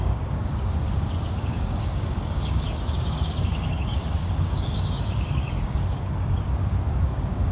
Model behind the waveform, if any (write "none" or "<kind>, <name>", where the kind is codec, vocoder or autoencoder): codec, DAC